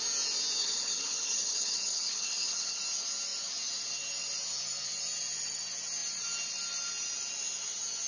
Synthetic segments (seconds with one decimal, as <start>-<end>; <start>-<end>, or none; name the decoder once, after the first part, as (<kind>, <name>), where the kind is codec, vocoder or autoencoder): 0.6-2.8 (codec, HILCodec)